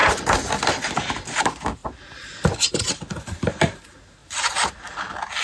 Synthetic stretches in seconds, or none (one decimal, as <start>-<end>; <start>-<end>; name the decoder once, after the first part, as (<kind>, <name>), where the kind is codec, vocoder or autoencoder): none